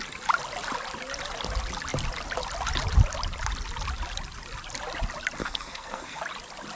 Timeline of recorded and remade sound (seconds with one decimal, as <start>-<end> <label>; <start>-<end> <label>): 0.0-5.4 recorded; 5.4-6.2 remade; 6.2-6.8 recorded